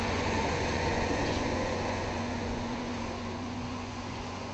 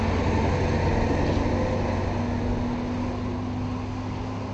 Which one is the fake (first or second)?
first